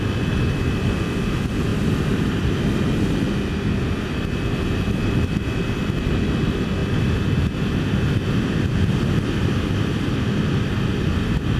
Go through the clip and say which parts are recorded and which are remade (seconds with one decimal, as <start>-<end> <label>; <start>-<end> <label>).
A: 0.0-1.7 recorded; 1.7-2.8 remade; 2.8-11.6 recorded